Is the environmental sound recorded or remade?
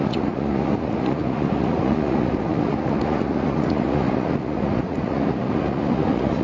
remade